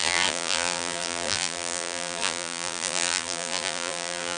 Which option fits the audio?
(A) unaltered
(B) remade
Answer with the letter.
B